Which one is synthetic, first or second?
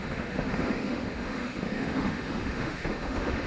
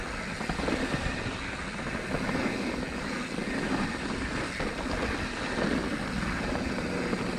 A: first